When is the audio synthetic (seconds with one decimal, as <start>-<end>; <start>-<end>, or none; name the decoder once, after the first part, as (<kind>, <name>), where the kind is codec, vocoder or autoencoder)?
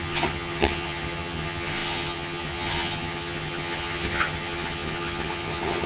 0.0-5.9 (vocoder, HiFi-GAN)